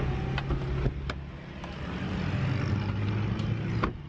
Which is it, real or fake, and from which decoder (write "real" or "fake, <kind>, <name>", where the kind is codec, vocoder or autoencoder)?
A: real